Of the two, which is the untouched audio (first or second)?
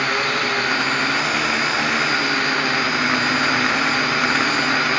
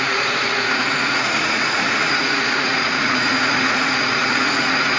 first